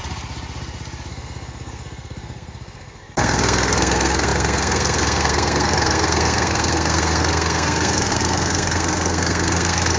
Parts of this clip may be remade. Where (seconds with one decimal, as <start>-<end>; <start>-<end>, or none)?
1.1-10.0

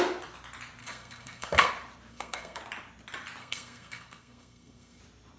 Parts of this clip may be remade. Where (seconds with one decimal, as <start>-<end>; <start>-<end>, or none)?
0.8-1.7; 2.1-2.6; 3.4-5.0